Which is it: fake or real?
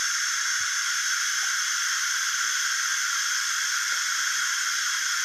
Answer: real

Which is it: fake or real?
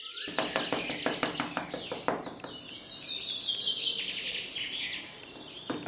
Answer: real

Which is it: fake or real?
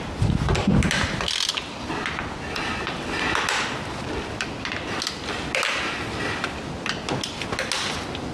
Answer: real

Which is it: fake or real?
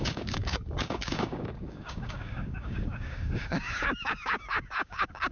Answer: fake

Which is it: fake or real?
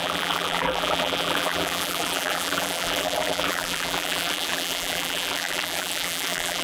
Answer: fake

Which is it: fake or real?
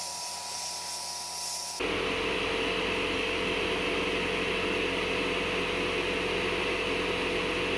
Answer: real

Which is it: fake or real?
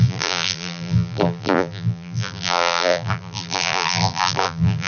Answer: fake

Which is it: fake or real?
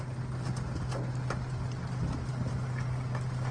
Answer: real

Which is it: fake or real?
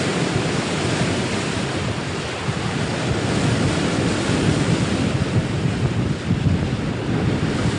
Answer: real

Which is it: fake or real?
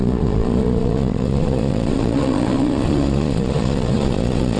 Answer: fake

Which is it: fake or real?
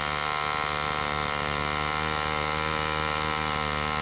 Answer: real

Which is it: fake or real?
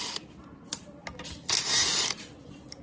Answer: real